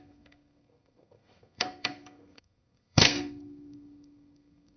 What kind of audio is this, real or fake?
fake